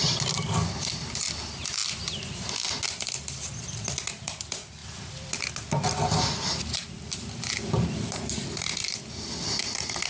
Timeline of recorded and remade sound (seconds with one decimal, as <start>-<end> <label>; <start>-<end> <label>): 0.0-1.8 recorded; 1.8-4.0 remade; 4.0-4.8 recorded; 4.8-7.5 remade; 7.5-10.1 recorded